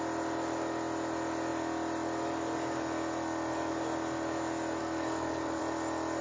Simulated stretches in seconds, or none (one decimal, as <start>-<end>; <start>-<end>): 4.8-5.6

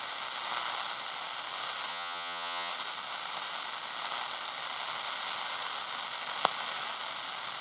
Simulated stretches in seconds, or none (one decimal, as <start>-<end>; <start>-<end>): 1.9-2.7